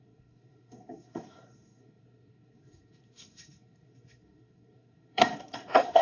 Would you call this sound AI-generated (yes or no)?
yes